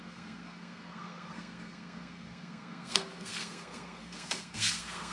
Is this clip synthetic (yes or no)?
yes